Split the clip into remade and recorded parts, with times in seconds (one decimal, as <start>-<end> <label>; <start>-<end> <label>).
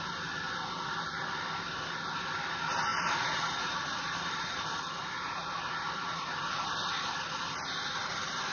0.0-2.9 recorded; 2.9-6.4 remade; 6.4-8.5 recorded